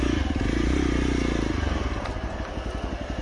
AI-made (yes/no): no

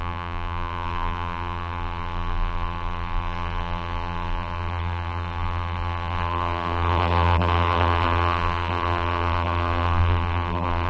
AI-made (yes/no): yes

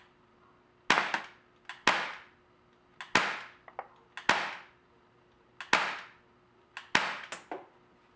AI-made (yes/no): no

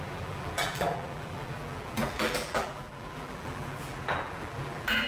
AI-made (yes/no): yes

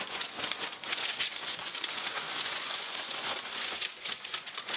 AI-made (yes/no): yes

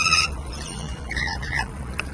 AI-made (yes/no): yes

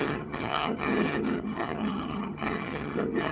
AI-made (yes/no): yes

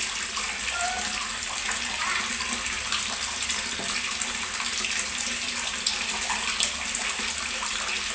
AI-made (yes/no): no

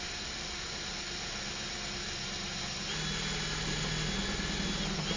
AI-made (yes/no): no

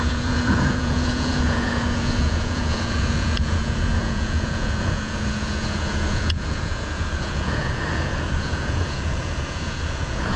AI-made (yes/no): yes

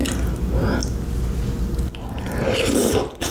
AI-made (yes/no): no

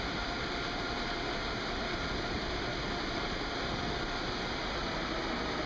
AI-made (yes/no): no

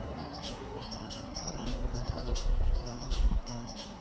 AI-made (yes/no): yes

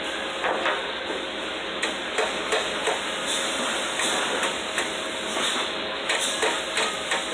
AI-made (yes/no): no